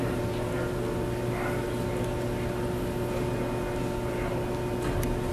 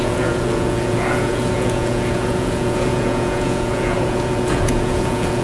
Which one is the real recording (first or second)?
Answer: first